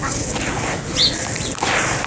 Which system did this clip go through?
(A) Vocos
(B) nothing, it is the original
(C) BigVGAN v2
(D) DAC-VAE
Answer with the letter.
B